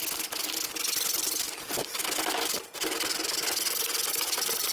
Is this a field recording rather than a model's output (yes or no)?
yes